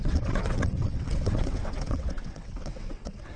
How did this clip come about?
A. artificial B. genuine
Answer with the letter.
A